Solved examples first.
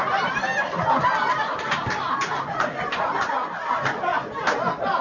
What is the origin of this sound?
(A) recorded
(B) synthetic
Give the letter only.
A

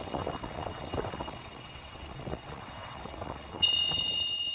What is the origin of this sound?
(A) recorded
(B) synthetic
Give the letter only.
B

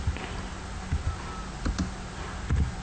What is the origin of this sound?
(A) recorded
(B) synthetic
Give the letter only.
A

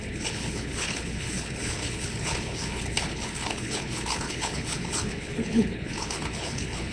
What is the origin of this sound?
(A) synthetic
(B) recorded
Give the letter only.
A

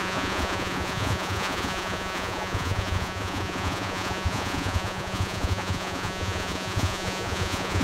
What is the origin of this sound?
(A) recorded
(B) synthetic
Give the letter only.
B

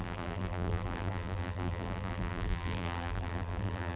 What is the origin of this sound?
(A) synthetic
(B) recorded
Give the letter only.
A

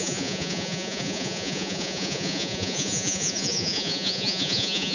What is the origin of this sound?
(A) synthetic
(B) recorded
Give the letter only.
A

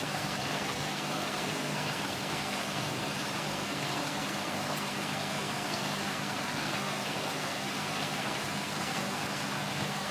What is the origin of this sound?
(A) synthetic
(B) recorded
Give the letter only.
A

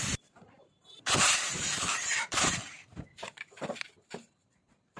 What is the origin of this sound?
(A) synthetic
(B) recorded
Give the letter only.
A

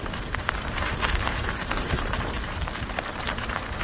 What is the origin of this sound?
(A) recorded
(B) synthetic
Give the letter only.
B